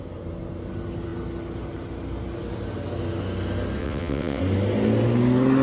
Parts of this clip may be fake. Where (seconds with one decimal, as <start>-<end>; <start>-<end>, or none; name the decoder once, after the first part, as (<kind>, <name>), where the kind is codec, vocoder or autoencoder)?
3.8-4.4 (vocoder, WaveNeXt)